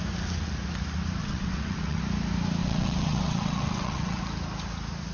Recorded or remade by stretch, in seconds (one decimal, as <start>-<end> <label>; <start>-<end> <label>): 0.0-1.2 recorded; 1.2-2.0 remade; 2.0-2.6 recorded; 2.6-4.2 remade; 4.2-5.1 recorded